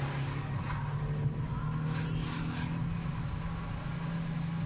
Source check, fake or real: real